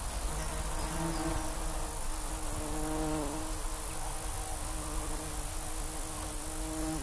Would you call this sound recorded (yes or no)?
yes